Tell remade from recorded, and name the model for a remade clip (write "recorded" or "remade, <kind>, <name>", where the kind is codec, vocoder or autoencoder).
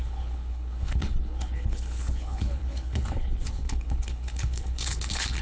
remade, codec, HILCodec